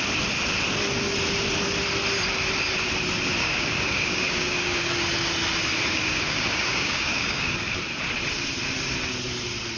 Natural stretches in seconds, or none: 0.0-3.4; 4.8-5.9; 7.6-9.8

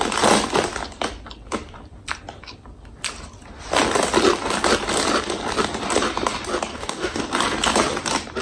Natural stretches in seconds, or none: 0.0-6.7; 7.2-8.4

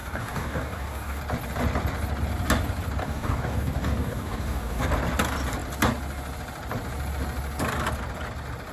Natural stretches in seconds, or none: 1.2-3.0; 4.9-8.7

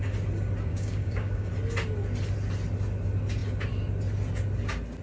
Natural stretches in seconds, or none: 0.0-0.7; 1.5-5.0

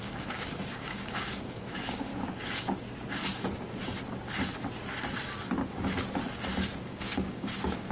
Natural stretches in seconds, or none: 2.1-6.8

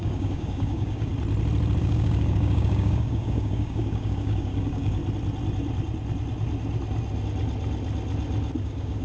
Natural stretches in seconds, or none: 1.1-1.8; 5.0-8.6

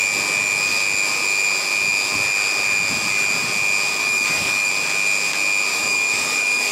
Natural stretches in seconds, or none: 0.0-4.0; 4.7-5.7

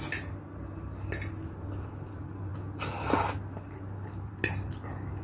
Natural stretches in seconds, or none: 0.0-5.2